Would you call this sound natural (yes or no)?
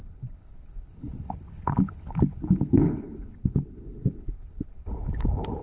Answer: no